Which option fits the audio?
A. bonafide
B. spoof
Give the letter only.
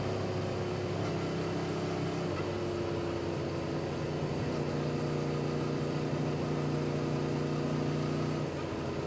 A